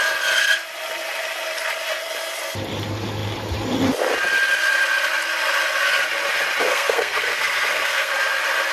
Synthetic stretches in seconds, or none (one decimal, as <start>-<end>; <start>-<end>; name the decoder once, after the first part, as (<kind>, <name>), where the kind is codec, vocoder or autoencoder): 6.7-8.1 (codec, SNAC)